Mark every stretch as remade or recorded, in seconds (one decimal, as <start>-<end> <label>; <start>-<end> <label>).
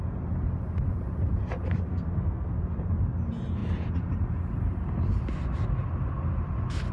0.0-1.9 recorded; 1.9-2.5 remade; 2.5-6.9 recorded